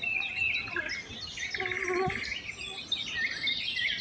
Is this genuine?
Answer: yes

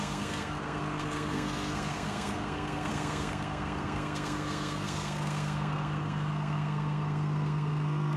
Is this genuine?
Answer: no